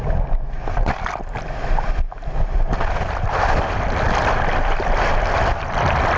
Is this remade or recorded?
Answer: recorded